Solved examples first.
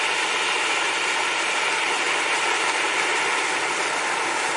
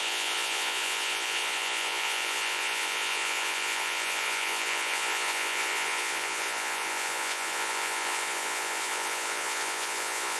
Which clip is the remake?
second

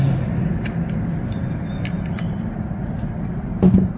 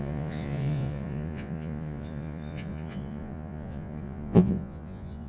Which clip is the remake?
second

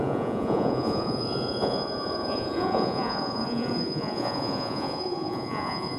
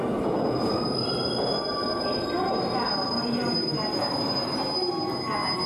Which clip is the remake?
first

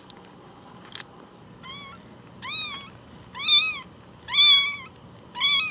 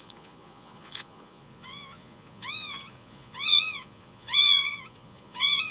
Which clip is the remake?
second